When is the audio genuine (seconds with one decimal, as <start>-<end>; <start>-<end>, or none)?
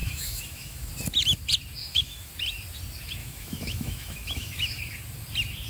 0.9-1.8; 2.3-3.2; 4.8-5.7